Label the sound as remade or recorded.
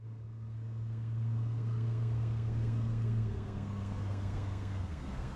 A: remade